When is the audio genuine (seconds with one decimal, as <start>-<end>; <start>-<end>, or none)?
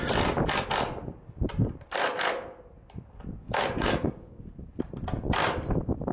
0.0-3.4; 4.4-6.1